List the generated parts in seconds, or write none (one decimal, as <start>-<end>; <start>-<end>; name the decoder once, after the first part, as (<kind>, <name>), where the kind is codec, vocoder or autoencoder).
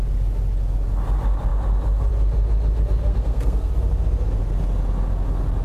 3.0-3.7 (codec, SNAC)